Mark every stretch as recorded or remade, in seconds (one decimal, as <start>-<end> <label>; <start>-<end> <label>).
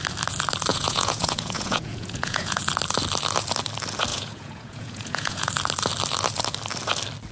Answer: 0.0-0.7 recorded; 0.7-2.6 remade; 2.6-4.1 recorded; 4.1-5.5 remade; 5.5-7.3 recorded